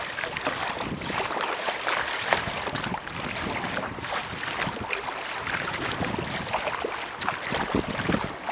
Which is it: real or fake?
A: real